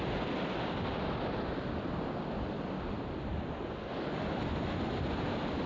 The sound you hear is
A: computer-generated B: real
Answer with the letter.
B